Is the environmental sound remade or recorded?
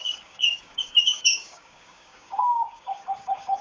remade